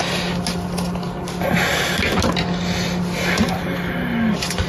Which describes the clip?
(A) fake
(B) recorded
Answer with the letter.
B